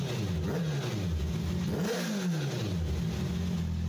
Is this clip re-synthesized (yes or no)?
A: no